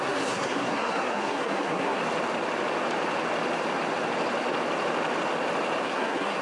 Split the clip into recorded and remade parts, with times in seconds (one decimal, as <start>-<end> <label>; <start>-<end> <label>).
0.0-2.0 remade; 2.0-5.8 recorded; 5.8-6.4 remade